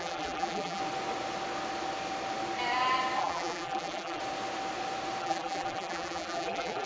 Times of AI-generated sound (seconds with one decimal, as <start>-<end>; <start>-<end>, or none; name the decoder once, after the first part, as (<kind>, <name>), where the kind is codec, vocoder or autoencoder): 0.0-0.8 (vocoder, BigVGAN v2); 3.2-4.2; 5.2-6.9